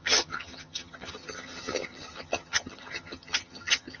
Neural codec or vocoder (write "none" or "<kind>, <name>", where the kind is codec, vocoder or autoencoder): vocoder, HiFi-GAN